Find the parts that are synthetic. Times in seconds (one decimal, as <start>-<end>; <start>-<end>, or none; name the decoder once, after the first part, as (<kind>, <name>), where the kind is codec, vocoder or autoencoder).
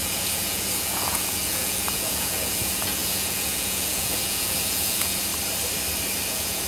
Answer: 0.0-5.3 (vocoder, Vocos); 6.3-6.7